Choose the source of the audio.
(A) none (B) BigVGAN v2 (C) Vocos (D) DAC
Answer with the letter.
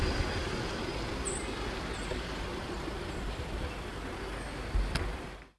A